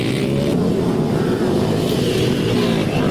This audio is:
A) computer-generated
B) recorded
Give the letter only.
B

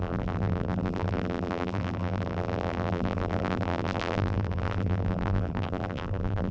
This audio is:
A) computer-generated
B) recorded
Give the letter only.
A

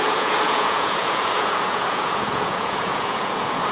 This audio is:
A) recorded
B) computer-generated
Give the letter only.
B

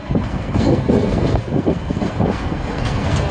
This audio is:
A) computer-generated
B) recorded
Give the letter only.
A